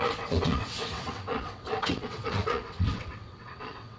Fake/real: fake